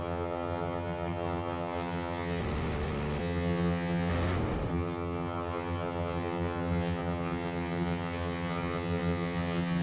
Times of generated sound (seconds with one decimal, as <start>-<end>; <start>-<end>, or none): 0.0-2.4; 3.2-4.1; 4.7-9.8